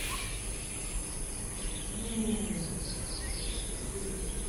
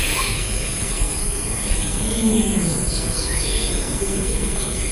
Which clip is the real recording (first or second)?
first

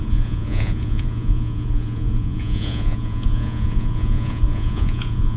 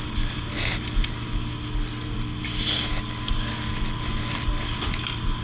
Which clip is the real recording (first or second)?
second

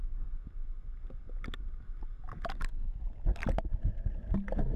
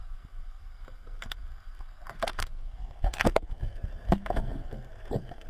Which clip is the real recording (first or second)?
first